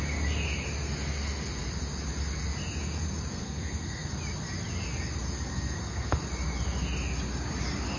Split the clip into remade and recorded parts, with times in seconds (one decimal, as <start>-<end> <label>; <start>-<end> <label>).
0.0-3.3 recorded; 3.3-4.1 remade; 4.1-5.5 recorded; 5.5-6.2 remade; 6.2-8.0 recorded